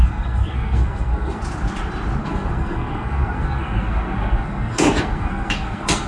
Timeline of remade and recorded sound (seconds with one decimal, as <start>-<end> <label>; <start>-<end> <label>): 0.0-1.4 remade; 1.4-2.2 recorded; 2.2-6.1 remade